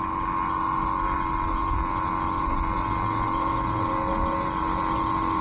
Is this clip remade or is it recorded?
recorded